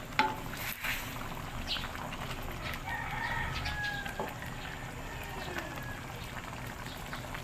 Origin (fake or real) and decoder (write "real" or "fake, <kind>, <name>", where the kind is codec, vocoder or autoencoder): real